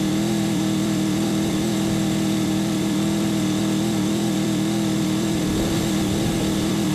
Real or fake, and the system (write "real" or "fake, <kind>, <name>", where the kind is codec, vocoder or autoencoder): fake, vocoder, BigVGAN v2